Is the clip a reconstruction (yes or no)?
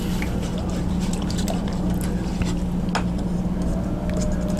no